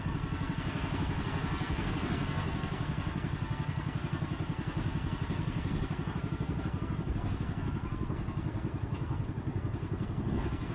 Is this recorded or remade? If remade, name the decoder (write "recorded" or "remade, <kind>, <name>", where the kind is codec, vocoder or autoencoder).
remade, codec, SNAC